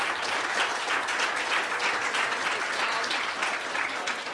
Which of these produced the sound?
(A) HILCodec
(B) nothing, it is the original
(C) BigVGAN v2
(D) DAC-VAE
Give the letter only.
B